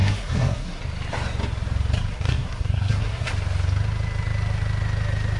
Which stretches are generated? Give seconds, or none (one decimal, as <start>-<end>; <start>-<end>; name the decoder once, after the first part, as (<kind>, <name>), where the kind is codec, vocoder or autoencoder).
0.0-0.8 (codec, SNAC); 2.1-3.3